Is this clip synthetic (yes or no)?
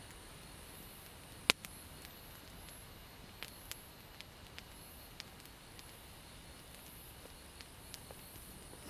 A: no